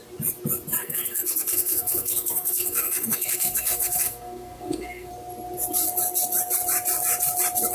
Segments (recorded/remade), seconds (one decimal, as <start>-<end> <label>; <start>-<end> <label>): 0.0-0.8 recorded; 0.8-5.1 remade; 5.1-7.7 recorded